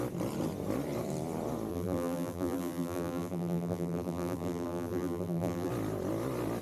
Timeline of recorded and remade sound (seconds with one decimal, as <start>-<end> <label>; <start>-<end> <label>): 0.0-1.7 recorded; 1.7-5.7 remade; 5.7-6.6 recorded